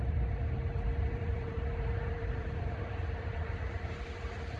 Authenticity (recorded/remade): remade